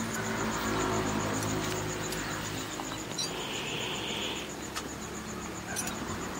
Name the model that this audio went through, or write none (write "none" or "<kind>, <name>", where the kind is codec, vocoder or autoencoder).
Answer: none